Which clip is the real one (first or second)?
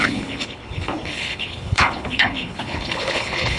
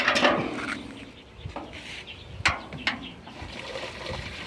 second